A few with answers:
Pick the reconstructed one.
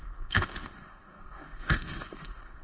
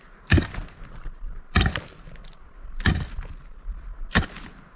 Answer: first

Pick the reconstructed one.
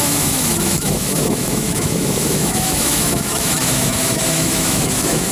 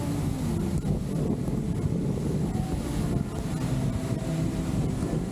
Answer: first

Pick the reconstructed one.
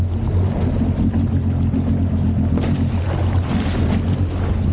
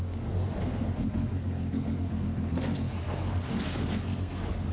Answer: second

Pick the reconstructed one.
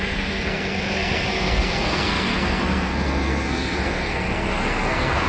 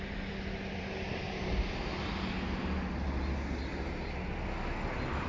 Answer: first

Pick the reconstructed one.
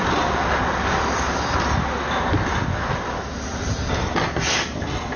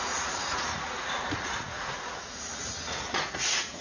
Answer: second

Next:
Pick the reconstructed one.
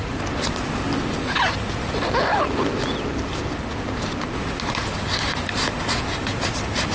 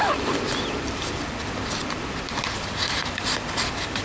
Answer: second